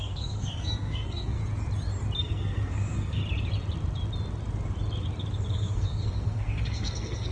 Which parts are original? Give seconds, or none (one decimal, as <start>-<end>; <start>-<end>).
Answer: 1.4-2.2; 3.2-5.5